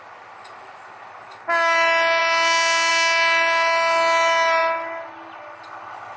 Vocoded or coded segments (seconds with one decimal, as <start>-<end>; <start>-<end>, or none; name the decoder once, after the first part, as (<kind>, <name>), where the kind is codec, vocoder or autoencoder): none